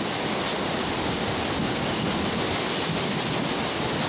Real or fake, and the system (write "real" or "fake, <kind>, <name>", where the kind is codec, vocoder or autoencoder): real